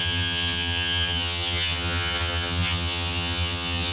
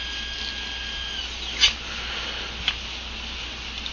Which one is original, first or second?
second